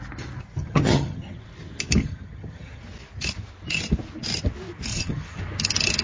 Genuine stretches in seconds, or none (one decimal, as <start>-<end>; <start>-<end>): 0.0-0.6; 1.4-2.0; 2.8-4.9; 5.4-6.0